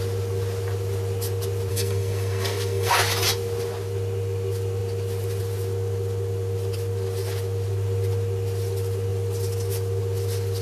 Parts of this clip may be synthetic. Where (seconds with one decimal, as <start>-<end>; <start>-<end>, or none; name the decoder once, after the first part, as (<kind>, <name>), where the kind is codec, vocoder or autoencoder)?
1.7-2.9 (codec, SNAC)